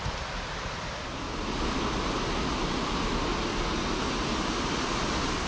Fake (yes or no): no